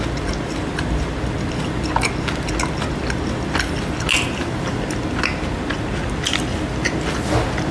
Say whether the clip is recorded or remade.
recorded